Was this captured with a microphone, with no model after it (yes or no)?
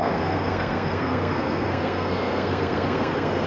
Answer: no